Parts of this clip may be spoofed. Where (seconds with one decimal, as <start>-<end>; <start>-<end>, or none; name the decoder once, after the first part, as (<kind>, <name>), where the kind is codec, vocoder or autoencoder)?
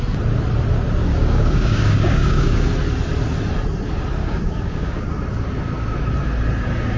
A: 1.1-2.7 (codec, DAC); 4.2-5.1